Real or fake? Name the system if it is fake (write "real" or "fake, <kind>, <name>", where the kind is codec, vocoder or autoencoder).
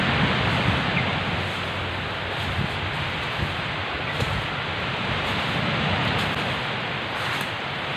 real